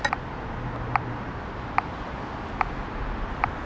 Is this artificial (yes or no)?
no